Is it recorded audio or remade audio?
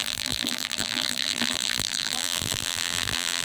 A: remade